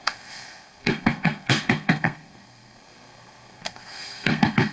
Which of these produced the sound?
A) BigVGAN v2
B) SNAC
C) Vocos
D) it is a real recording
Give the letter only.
B